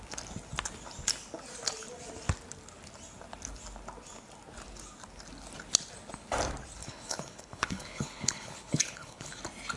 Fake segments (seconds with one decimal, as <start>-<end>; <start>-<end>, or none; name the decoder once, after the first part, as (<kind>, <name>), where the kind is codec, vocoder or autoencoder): 6.8-9.4 (codec, HILCodec)